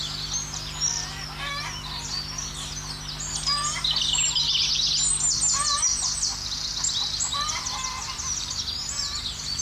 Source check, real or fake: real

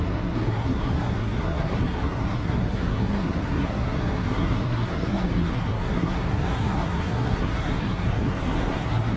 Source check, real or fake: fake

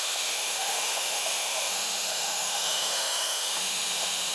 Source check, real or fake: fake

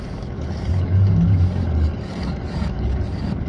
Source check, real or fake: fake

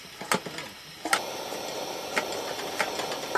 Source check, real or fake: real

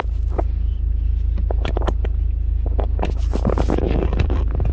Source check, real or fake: real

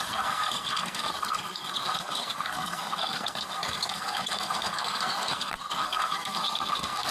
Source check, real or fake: fake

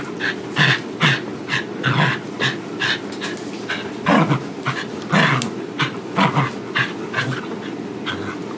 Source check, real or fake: real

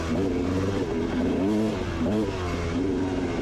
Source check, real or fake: real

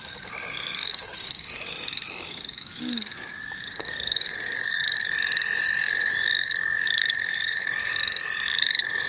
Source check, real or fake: fake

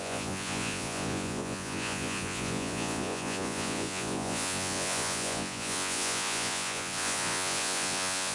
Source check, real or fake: fake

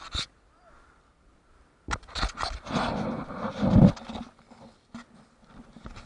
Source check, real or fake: real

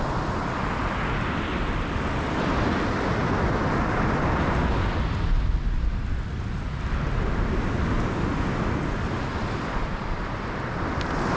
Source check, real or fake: real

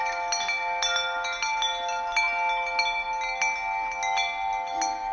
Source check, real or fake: real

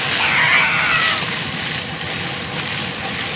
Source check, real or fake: real